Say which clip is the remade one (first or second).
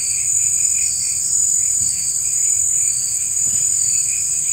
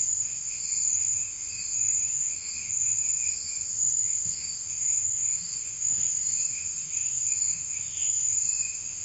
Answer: second